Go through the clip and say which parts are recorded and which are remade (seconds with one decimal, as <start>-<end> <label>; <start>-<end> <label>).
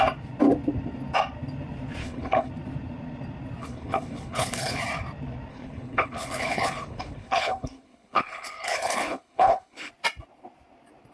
0.0-2.0 recorded; 2.0-2.5 remade; 2.5-3.6 recorded; 3.6-4.8 remade; 4.8-5.5 recorded; 5.5-9.9 remade; 9.9-11.1 recorded